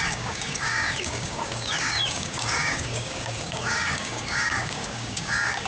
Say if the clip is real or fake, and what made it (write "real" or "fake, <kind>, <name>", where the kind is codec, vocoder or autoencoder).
fake, codec, DAC